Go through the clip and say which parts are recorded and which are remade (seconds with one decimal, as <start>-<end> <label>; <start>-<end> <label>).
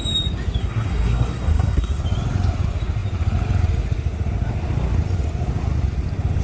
0.0-0.6 recorded; 0.6-2.0 remade; 2.0-6.4 recorded